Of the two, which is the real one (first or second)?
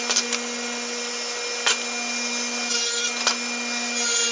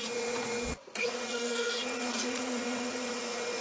first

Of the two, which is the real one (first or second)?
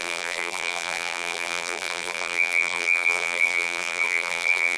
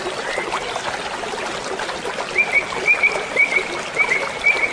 second